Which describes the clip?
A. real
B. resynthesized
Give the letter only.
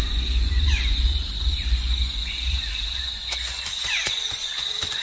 B